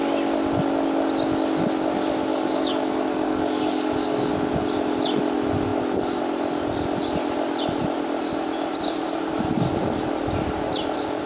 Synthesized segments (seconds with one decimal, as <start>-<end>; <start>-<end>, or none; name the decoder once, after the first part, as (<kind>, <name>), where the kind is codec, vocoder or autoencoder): 2.3-4.3 (codec, DAC)